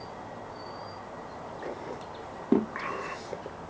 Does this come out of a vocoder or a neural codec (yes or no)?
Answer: no